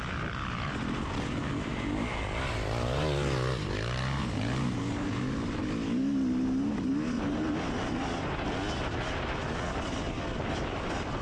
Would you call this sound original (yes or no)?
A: yes